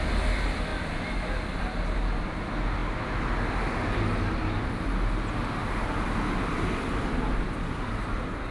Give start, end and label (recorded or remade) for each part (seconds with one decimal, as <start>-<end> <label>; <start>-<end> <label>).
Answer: 0.0-8.5 recorded